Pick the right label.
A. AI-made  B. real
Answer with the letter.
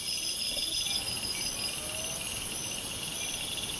B